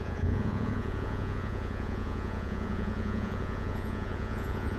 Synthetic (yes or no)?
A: yes